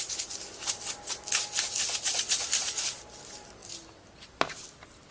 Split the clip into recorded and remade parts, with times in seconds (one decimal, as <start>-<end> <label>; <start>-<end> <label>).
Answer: 0.0-5.1 recorded